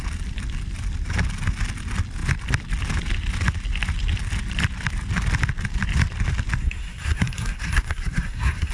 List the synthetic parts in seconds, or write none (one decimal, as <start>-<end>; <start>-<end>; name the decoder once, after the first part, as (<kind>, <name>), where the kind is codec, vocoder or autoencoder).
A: 6.6-8.7 (codec, SNAC)